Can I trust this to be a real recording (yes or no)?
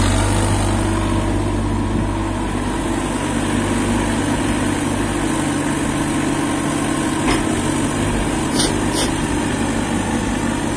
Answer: yes